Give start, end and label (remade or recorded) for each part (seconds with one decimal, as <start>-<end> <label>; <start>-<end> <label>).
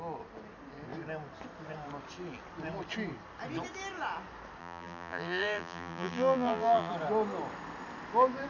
0.0-4.6 recorded; 4.6-6.9 remade; 6.9-8.5 recorded